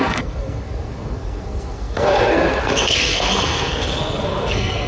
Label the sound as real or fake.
fake